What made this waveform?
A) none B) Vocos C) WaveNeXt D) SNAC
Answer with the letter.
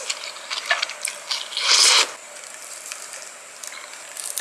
A